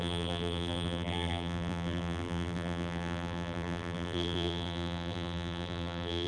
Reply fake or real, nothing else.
fake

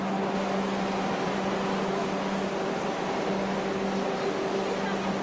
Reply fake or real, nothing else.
real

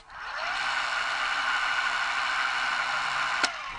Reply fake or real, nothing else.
real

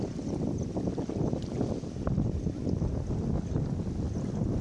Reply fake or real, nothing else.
real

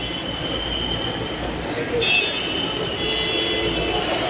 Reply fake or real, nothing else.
real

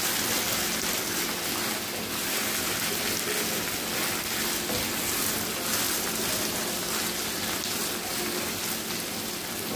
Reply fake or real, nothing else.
real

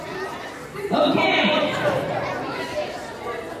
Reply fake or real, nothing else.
real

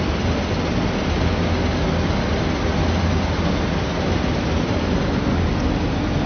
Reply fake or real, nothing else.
real